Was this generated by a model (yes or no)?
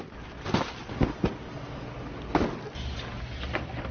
no